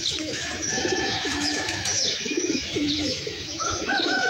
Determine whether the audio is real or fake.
fake